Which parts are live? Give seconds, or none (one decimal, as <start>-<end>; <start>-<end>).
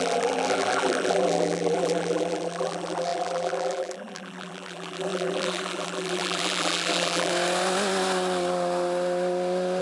7.3-9.8